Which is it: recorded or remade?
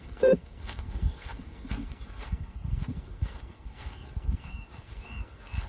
remade